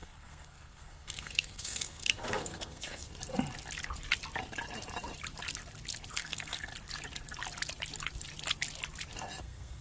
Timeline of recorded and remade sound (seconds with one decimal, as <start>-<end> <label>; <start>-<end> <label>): 0.0-3.1 remade; 3.1-6.1 recorded; 6.1-6.7 remade; 6.7-9.4 recorded; 9.4-9.8 remade